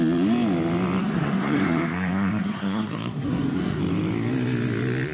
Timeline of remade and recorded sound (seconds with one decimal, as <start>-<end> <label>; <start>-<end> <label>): 0.0-1.0 recorded; 1.0-3.8 remade; 3.8-5.1 recorded